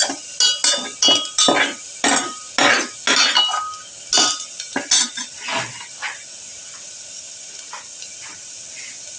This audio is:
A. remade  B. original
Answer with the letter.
B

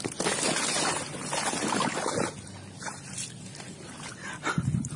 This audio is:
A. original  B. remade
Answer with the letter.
A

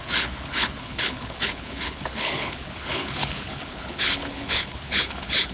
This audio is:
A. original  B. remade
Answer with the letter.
B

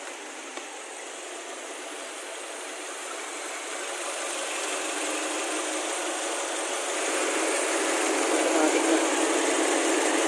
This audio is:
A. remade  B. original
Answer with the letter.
B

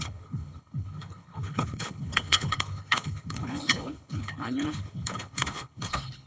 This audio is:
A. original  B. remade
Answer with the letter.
B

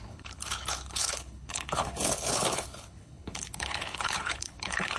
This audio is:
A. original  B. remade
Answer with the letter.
B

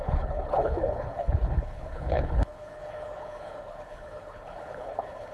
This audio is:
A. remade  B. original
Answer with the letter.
A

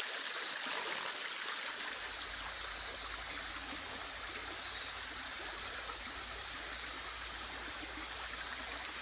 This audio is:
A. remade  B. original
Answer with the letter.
B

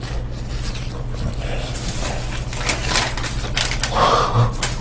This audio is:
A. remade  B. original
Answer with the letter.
B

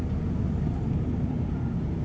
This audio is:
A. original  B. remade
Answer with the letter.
A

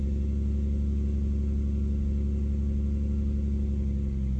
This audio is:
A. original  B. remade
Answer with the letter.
A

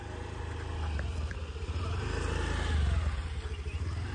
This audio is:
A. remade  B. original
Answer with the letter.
B